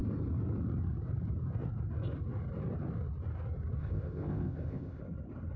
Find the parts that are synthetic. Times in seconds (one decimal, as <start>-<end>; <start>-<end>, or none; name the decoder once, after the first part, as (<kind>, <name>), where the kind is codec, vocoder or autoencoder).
3.8-5.0 (codec, ZipCodec)